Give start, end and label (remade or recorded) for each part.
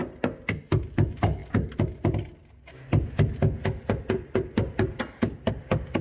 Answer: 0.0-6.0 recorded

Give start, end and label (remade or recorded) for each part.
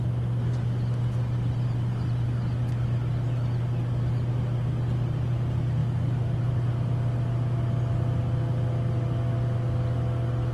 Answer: 0.0-10.5 recorded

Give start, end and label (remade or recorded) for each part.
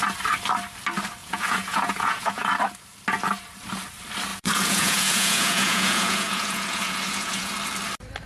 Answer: 0.0-1.2 recorded; 1.2-2.5 remade; 2.5-4.3 recorded; 4.3-7.5 remade; 7.5-8.3 recorded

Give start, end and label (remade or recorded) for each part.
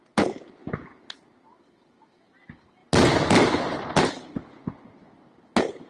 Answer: 0.0-5.9 recorded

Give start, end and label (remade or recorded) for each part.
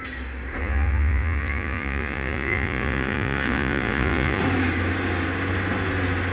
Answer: 0.0-0.6 recorded; 0.6-4.4 remade; 4.4-6.3 recorded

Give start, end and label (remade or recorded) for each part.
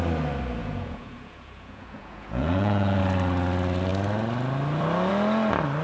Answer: 0.0-0.6 recorded; 0.6-3.0 remade; 3.0-5.8 recorded